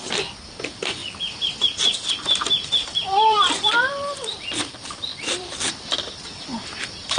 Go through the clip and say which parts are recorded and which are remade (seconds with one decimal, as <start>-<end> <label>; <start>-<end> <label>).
0.0-1.0 remade; 1.0-1.6 recorded; 1.6-7.2 remade